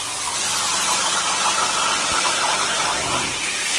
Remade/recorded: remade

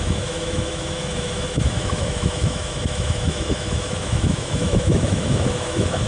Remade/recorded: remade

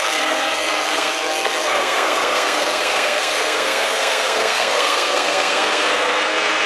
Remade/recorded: remade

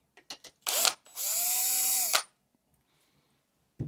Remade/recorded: recorded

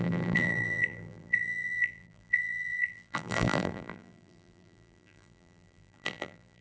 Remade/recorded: remade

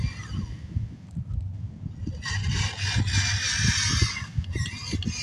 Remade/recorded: recorded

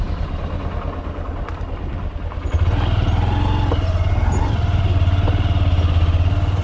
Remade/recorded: recorded